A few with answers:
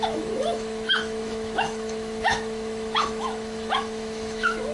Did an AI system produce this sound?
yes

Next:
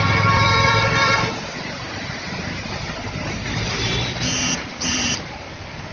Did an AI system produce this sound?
yes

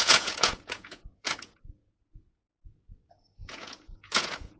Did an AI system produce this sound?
yes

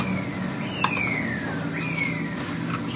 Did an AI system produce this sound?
no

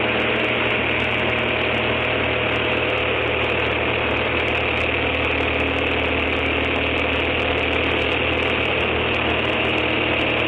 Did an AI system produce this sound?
no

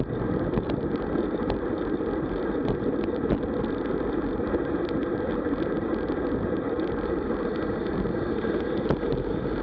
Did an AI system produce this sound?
yes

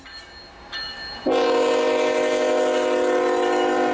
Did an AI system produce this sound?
no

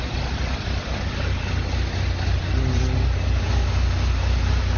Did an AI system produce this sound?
no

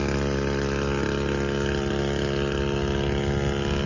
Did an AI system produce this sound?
no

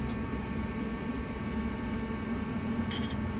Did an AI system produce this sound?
yes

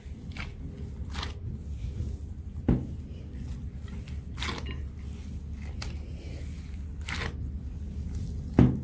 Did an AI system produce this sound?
no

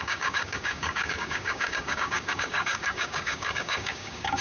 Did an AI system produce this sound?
yes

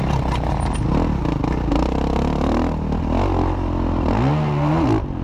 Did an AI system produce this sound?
no